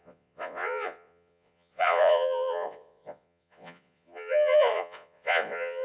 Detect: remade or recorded remade